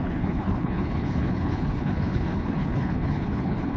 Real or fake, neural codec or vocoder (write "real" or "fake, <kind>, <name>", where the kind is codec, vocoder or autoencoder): fake, codec, HILCodec